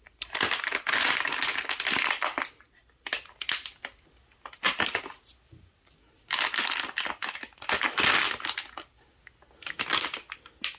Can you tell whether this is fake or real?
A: real